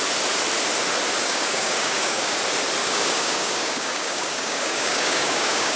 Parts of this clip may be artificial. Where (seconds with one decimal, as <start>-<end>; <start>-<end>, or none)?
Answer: 1.2-2.4; 2.8-5.8